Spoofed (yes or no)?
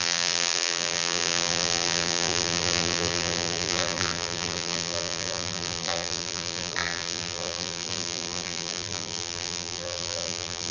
yes